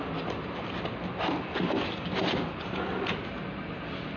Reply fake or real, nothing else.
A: real